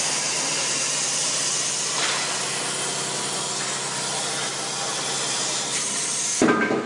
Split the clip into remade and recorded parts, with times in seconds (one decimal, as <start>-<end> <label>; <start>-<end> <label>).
0.0-1.2 remade; 1.2-5.3 recorded; 5.3-6.9 remade